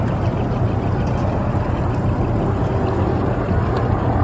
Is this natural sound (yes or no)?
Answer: yes